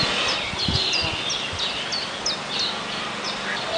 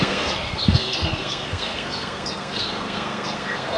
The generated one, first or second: second